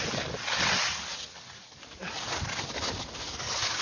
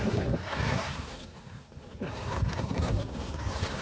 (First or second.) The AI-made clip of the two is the second